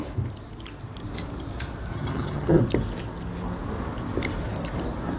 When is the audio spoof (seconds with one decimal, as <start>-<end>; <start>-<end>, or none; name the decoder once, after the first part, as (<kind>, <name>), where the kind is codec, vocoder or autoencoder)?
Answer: 1.9-2.6 (vocoder, HiFi-GAN)